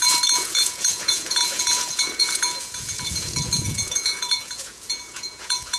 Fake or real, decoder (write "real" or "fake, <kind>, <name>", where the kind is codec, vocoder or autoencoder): fake, vocoder, Vocos